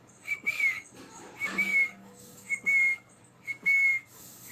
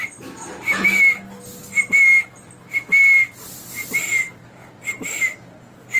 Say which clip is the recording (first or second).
second